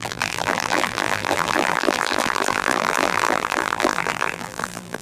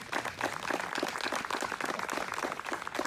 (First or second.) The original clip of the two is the second